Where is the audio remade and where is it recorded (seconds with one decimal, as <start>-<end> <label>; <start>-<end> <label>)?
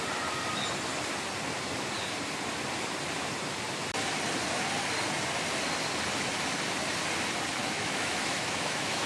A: 0.0-7.6 recorded; 7.6-9.1 remade